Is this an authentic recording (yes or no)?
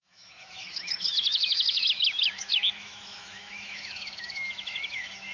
no